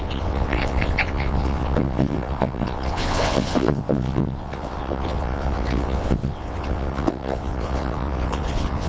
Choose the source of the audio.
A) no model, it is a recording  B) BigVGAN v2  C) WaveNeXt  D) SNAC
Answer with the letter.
C